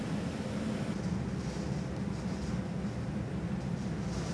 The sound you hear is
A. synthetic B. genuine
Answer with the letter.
B